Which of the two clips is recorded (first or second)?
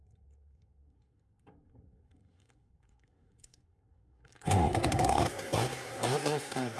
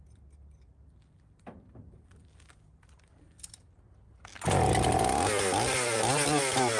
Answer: second